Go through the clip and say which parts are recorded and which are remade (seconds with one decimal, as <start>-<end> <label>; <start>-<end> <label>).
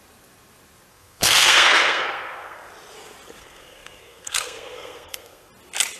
0.0-0.9 recorded; 0.9-2.7 remade; 2.7-3.4 recorded; 3.4-5.5 remade; 5.5-6.0 recorded